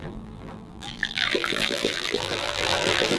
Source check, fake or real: fake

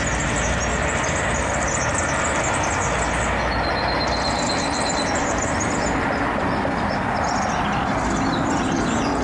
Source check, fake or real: real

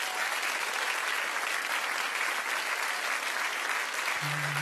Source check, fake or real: real